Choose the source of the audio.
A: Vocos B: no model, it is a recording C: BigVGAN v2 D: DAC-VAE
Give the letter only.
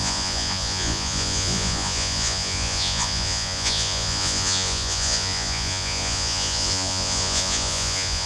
A